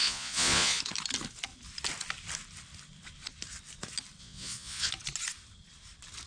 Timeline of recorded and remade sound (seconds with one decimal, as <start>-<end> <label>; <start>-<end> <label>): 0.0-0.8 remade; 0.8-4.2 recorded; 4.2-4.9 remade; 4.9-6.3 recorded